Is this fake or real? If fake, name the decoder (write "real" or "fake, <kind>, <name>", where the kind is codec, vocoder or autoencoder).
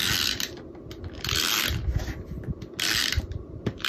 real